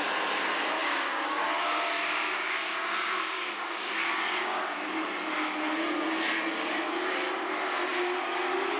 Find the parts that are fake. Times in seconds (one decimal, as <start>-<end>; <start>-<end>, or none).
0.8-5.0

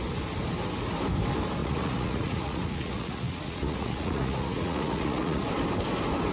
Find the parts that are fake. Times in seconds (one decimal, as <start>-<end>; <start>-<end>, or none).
1.6-5.4

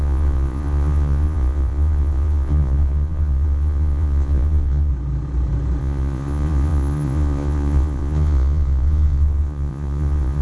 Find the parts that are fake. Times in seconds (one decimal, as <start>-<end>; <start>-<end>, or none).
0.0-4.9; 5.8-10.4

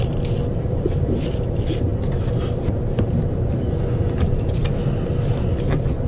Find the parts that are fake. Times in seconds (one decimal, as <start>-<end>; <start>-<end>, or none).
0.5-1.0

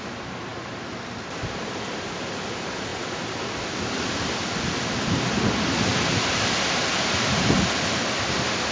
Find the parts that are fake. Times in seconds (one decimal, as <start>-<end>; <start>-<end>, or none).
none

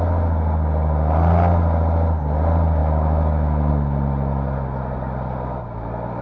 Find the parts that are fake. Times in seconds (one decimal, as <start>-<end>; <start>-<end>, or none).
2.8-3.7

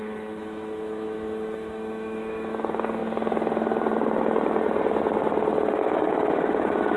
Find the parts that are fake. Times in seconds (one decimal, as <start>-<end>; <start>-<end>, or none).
0.0-3.0; 5.8-7.0